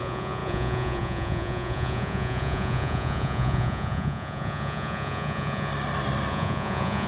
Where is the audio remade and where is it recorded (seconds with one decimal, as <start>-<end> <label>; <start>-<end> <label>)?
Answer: 0.0-5.7 remade; 5.7-6.3 recorded; 6.3-7.1 remade